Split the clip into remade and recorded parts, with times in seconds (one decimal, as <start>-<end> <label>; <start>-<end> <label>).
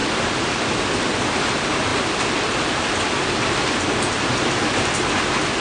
0.0-5.6 recorded